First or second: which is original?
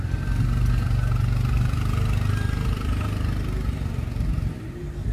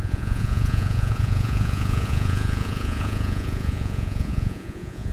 first